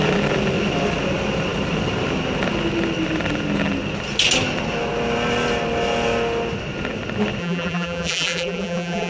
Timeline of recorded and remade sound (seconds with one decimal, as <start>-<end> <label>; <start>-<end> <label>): 0.0-7.4 recorded; 7.4-9.1 remade